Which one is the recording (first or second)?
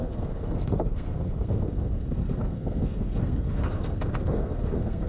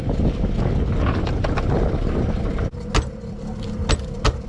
second